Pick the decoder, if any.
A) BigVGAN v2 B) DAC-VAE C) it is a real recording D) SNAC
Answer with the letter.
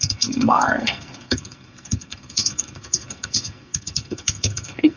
D